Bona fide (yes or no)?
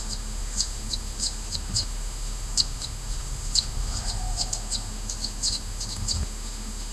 no